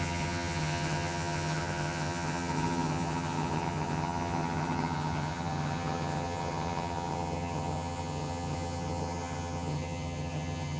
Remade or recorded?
remade